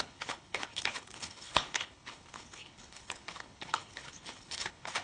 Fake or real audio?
fake